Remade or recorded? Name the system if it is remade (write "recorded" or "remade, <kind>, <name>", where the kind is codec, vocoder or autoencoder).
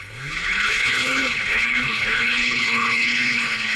remade, codec, HILCodec